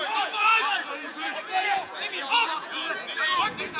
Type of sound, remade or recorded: remade